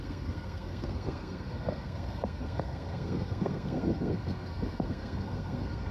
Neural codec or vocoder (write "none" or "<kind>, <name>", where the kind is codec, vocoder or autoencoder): codec, SNAC